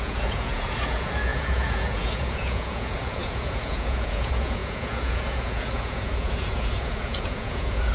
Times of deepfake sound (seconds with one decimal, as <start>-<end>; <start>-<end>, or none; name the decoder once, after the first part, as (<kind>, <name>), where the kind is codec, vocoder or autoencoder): 0.0-7.9 (vocoder, Vocos)